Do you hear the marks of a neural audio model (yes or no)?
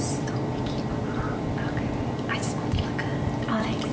no